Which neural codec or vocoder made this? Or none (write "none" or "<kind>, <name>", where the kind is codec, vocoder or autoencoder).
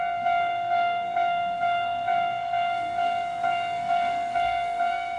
codec, SNAC